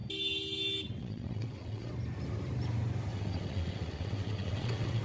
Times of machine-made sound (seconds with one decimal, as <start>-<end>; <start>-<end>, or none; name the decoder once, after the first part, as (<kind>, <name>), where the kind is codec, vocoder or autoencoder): 1.0-1.9 (vocoder, WaveNeXt); 3.1-5.0